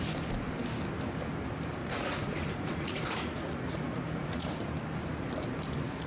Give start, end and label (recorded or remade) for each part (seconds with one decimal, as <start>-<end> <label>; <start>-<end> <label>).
0.0-1.8 recorded; 1.8-4.6 remade; 4.6-6.1 recorded

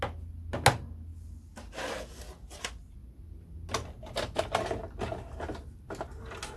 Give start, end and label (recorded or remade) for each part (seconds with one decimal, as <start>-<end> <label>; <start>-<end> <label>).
0.0-6.6 recorded

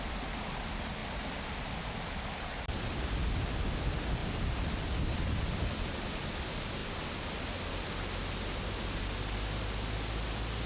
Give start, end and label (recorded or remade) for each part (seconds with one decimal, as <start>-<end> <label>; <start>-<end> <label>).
0.0-10.7 recorded

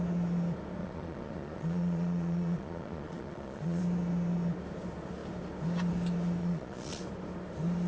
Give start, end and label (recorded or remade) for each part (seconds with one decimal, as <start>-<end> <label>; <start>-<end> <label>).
0.0-0.8 recorded; 0.8-3.8 remade; 3.8-6.4 recorded; 6.4-7.0 remade; 7.0-7.9 recorded

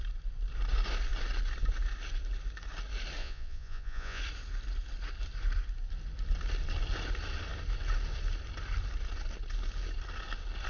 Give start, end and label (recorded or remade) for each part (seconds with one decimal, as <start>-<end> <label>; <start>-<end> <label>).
0.0-3.2 recorded; 3.2-4.2 remade; 4.2-10.7 recorded

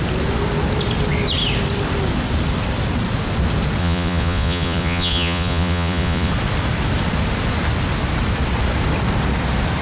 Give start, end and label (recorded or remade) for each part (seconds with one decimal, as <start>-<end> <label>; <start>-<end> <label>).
0.0-3.8 recorded; 3.8-6.3 remade; 6.3-9.8 recorded

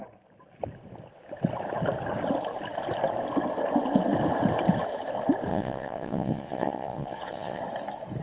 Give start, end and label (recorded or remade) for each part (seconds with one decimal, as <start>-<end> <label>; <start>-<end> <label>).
0.0-5.5 recorded; 5.5-7.6 remade; 7.6-8.2 recorded